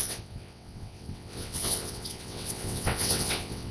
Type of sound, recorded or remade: remade